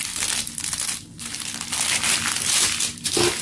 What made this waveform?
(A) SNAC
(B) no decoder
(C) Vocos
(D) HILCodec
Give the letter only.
B